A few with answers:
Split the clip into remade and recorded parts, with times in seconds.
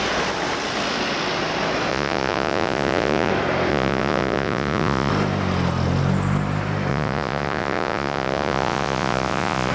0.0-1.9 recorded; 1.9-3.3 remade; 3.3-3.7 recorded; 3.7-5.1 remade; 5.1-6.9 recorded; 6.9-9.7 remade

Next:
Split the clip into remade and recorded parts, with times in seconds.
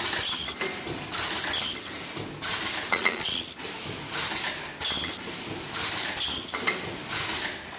0.0-2.9 recorded; 2.9-3.4 remade; 3.4-7.8 recorded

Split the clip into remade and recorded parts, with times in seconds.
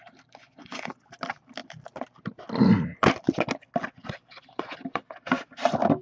0.0-0.4 recorded; 0.4-1.1 remade; 1.1-6.0 recorded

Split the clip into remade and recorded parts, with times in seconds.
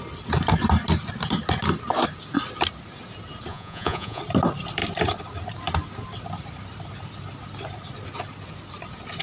0.0-3.5 recorded; 3.5-4.2 remade; 4.2-9.2 recorded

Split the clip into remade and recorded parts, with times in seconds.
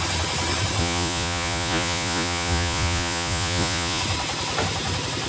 0.0-0.8 recorded; 0.8-4.0 remade; 4.0-5.3 recorded